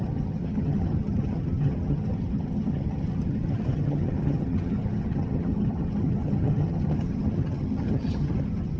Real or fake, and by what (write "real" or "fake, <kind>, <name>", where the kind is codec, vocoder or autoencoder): fake, vocoder, HiFi-GAN